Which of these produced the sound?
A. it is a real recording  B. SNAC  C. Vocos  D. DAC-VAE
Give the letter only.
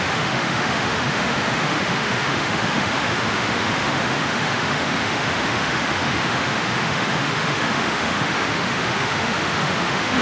D